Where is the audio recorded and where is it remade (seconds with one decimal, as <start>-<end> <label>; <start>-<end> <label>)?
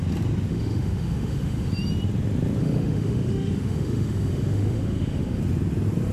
0.0-0.5 recorded; 0.5-1.7 remade; 1.7-2.6 recorded; 2.6-5.4 remade; 5.4-6.1 recorded